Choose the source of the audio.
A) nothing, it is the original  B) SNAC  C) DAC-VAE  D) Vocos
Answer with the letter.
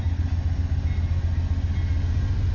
A